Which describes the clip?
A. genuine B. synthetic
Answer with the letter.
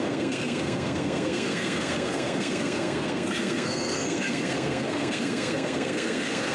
B